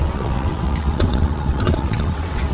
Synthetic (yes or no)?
yes